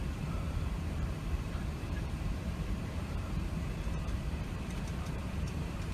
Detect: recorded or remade remade